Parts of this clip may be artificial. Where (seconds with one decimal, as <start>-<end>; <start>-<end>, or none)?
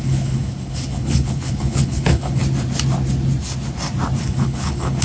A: 0.0-2.4; 4.2-5.0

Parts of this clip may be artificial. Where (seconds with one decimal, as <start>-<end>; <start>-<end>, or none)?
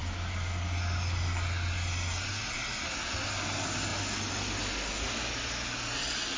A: none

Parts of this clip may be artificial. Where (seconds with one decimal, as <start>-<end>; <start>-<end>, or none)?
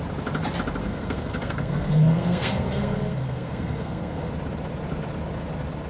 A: 0.8-4.3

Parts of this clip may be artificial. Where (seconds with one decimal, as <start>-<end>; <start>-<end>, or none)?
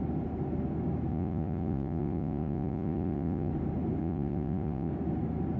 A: 1.1-3.5; 4.0-4.9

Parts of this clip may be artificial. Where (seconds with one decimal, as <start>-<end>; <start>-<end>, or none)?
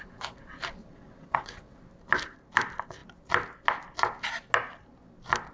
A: 0.8-1.8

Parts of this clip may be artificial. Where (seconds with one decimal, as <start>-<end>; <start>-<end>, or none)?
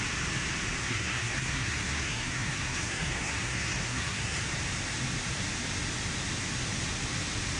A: 0.8-4.4